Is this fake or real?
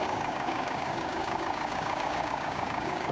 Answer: fake